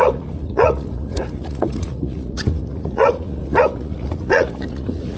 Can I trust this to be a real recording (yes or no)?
no